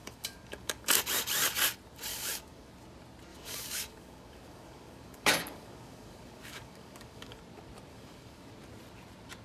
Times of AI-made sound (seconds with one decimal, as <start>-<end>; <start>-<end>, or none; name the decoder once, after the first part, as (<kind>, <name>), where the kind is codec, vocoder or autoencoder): 0.0-1.0 (codec, DAC); 2.1-2.7; 3.3-7.4; 7.9-8.5